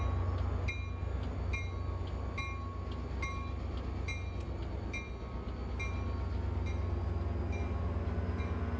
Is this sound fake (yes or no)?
no